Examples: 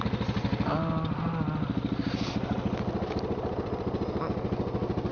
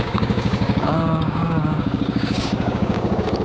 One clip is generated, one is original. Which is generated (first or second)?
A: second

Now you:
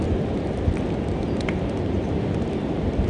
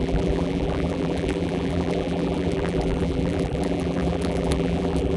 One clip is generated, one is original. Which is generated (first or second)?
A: second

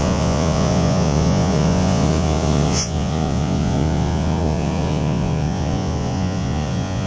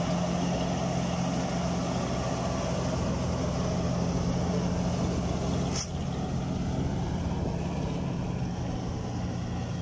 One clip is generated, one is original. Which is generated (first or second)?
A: first